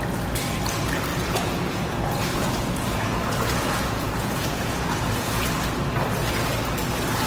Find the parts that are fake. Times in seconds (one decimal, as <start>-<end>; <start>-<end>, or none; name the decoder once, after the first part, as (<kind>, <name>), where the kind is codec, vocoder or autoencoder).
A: 1.1-5.5 (vocoder, Vocos)